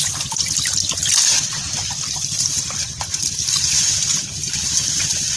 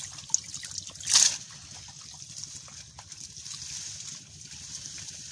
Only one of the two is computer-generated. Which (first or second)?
first